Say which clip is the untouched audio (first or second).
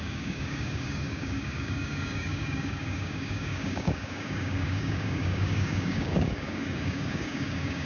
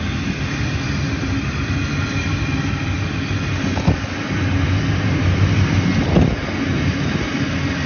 second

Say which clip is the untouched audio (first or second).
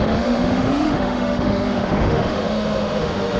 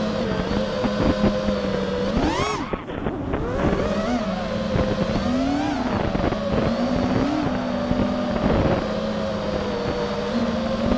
second